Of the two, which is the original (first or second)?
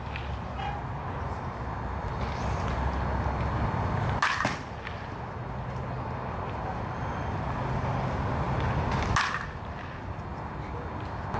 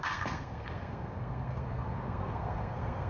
first